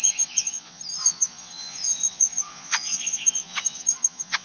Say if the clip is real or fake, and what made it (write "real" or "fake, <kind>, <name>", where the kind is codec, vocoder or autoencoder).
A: fake, vocoder, Vocos